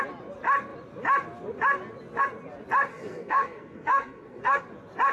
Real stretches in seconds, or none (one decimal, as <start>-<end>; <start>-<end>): 0.0-2.9; 4.6-5.1